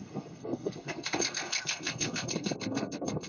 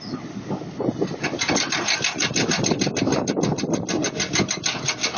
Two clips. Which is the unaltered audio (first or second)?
second